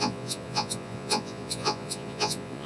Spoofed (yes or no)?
yes